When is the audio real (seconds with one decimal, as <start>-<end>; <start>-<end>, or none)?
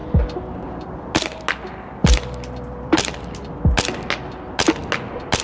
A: 0.0-2.0; 3.6-5.4